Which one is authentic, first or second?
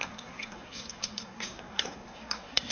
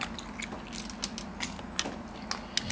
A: second